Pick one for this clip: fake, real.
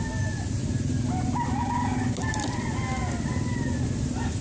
real